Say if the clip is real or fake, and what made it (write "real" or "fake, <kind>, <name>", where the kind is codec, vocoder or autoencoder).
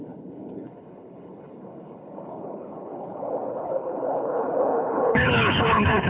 fake, codec, HILCodec